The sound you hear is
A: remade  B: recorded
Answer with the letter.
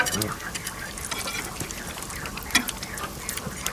B